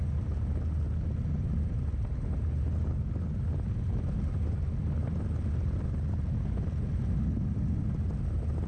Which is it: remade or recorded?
recorded